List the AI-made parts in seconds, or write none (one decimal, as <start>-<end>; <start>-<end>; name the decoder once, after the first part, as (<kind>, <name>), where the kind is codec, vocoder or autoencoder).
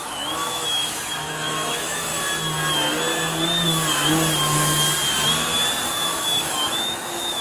0.0-2.1 (autoencoder, DAC-VAE); 5.9-7.4